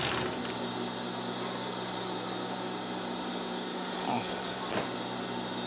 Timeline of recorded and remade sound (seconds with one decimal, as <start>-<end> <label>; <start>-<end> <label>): 0.0-3.7 recorded; 3.7-4.6 remade; 4.6-5.7 recorded